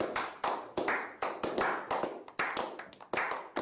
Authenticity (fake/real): real